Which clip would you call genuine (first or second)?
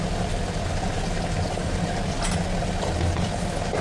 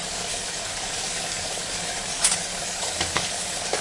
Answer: first